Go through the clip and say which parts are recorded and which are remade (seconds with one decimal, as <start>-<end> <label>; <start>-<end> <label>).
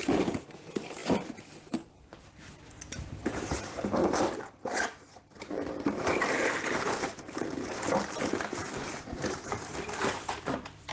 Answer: 0.0-10.9 remade